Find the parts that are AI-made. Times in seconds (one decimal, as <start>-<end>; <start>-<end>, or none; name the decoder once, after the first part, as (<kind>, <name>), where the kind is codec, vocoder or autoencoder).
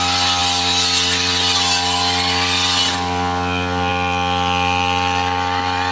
none